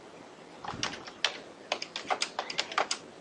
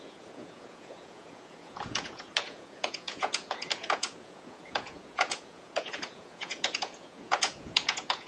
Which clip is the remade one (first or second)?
second